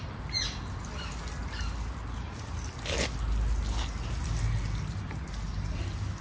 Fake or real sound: real